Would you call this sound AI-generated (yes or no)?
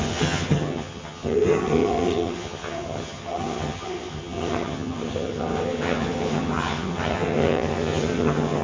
yes